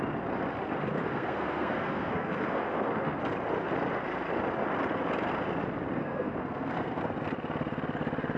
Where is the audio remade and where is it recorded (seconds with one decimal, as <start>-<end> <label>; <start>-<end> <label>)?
0.0-1.1 recorded; 1.1-3.2 remade; 3.2-6.0 recorded; 6.0-7.0 remade; 7.0-8.4 recorded